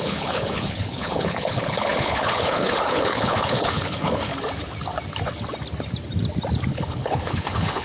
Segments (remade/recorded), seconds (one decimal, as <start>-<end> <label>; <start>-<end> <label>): 0.0-4.3 remade; 4.3-6.7 recorded; 6.7-7.8 remade